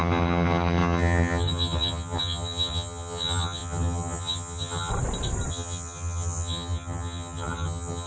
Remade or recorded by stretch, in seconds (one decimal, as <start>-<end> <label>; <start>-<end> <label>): 0.0-4.9 remade; 4.9-5.5 recorded; 5.5-8.1 remade